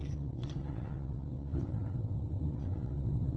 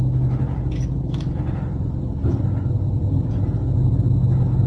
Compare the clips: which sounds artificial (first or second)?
first